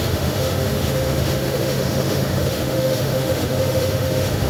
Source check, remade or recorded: remade